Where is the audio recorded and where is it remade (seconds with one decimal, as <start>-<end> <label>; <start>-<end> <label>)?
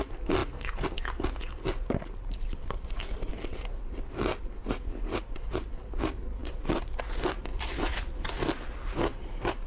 0.0-7.5 recorded; 7.5-8.1 remade; 8.1-9.7 recorded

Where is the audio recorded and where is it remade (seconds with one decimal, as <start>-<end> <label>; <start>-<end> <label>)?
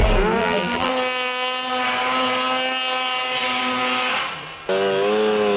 0.0-0.4 recorded; 0.4-0.9 remade; 0.9-5.6 recorded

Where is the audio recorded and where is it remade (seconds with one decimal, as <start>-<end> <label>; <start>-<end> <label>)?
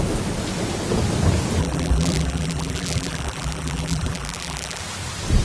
0.0-1.6 recorded; 1.6-4.8 remade; 4.8-5.4 recorded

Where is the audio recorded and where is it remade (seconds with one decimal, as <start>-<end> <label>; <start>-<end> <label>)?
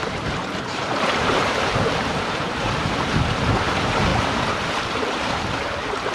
0.0-6.1 remade